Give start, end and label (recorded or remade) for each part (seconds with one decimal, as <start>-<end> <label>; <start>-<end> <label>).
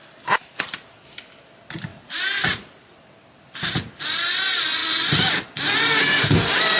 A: 0.0-6.8 recorded